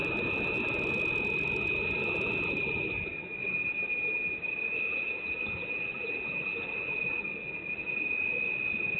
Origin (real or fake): real